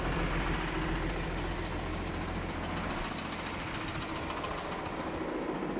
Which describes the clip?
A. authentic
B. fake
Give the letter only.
A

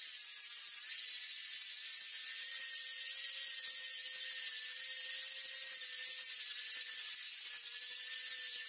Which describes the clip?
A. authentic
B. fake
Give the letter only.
A